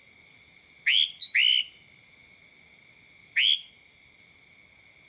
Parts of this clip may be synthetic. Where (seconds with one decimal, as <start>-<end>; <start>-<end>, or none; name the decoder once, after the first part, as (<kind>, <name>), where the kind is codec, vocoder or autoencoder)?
none